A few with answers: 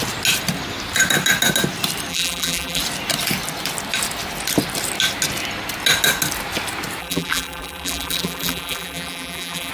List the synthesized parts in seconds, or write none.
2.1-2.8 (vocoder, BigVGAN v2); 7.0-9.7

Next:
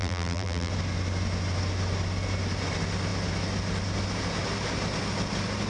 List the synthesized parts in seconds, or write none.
0.0-0.7 (vocoder, BigVGAN v2)

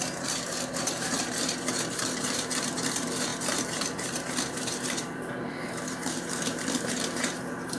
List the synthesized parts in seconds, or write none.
0.0-7.8 (vocoder, BigVGAN v2)